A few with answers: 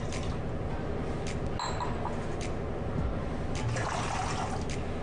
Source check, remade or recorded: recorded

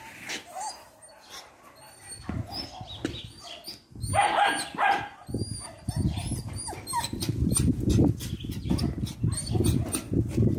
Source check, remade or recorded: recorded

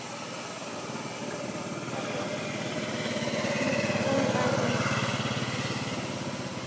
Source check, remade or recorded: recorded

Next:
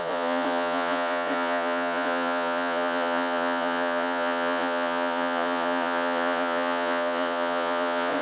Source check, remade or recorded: remade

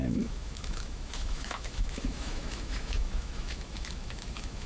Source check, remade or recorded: remade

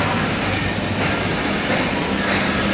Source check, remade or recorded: recorded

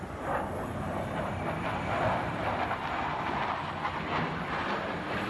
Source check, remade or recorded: recorded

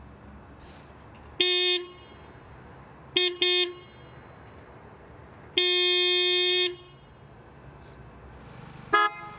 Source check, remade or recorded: recorded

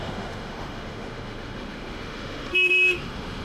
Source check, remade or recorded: remade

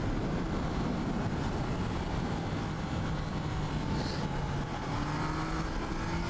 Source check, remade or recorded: recorded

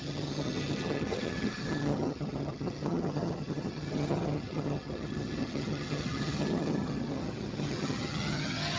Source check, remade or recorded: remade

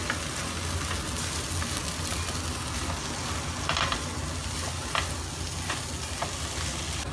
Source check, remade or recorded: recorded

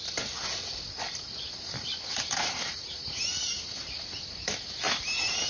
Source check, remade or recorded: recorded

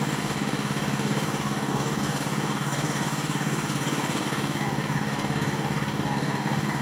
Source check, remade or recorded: remade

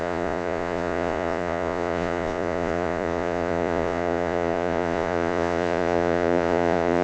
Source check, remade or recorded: remade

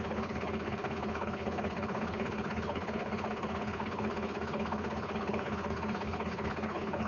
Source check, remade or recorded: remade